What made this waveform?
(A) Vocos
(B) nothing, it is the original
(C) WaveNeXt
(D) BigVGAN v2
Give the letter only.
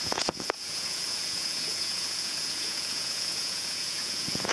A